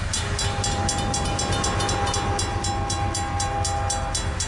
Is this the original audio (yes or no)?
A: yes